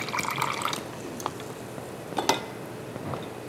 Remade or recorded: recorded